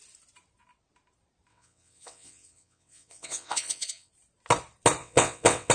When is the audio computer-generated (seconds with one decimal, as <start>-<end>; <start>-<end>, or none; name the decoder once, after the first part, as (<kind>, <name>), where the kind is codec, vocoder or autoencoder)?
1.5-4.1 (vocoder, WaveNeXt); 5.0-5.7